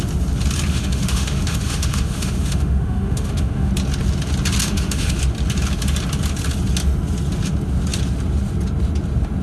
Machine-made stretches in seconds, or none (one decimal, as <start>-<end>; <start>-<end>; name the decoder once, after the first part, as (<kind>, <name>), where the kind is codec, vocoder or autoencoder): 0.7-3.7 (autoencoder, DAC-VAE); 4.6-5.2